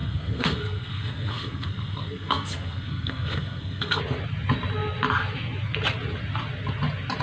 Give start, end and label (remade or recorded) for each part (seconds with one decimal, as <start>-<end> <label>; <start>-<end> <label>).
0.0-4.0 remade; 4.0-7.2 recorded